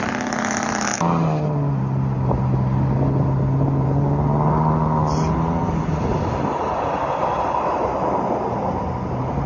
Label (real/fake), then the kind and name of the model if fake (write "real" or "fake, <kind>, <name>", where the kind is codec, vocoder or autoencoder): real